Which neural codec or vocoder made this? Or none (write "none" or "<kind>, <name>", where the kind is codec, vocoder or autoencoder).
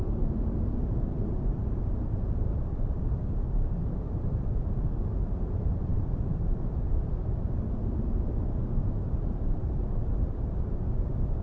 vocoder, BigVGAN v2